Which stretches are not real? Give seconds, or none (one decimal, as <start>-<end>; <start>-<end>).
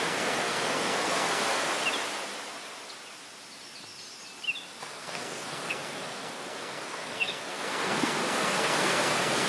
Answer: 0.0-1.7; 4.8-9.5